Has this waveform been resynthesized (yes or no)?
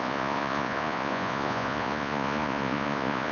yes